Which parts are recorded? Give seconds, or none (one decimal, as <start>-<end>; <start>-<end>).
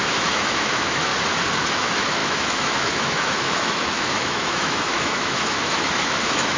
1.1-1.7